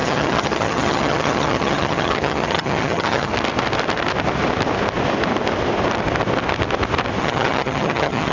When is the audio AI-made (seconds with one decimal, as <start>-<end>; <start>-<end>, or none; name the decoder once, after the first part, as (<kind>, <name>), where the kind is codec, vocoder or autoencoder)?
0.0-3.3 (vocoder, HiFi-GAN); 7.2-8.3